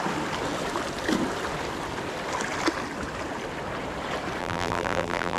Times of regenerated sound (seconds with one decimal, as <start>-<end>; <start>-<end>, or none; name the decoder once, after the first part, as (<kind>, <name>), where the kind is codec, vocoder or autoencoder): 4.4-5.4 (vocoder, BigVGAN v2)